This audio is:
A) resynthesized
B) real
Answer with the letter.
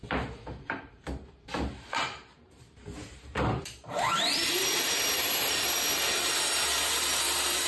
A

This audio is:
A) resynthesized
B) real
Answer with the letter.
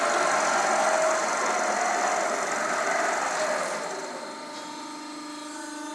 B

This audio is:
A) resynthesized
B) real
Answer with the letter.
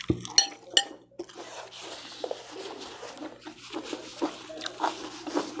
B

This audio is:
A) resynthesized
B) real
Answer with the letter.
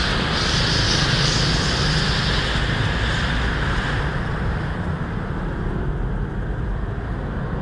B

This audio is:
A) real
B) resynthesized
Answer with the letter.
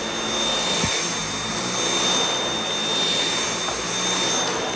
A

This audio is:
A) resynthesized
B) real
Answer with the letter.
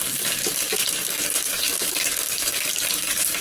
A